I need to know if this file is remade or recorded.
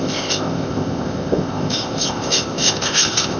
remade